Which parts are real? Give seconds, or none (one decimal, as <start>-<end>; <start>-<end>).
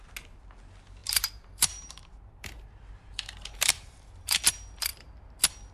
0.0-1.0; 4.4-5.7